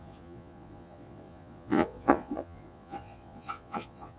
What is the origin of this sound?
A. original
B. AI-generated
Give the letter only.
B